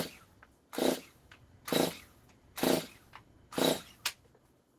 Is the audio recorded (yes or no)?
yes